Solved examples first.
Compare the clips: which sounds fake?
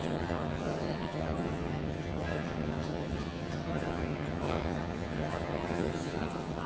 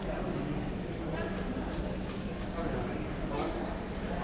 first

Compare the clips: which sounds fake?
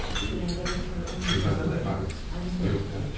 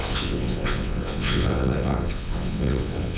second